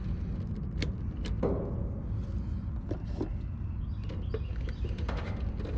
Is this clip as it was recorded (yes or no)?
yes